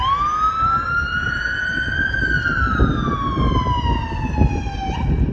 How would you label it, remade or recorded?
recorded